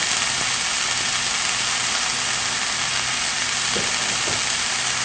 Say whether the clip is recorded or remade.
recorded